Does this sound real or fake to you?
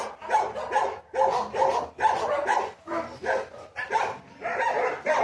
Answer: real